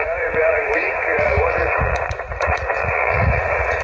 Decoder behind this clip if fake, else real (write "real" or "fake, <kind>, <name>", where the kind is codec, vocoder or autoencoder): fake, vocoder, Vocos